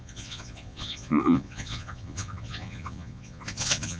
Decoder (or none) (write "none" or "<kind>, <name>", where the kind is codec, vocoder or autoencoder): vocoder, Vocos